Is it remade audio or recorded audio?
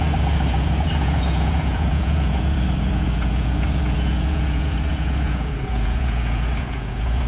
remade